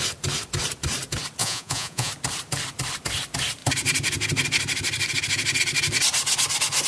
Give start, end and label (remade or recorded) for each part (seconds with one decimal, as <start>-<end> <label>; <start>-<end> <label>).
0.0-1.4 recorded; 1.4-2.1 remade; 2.1-6.9 recorded